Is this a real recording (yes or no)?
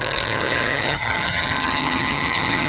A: no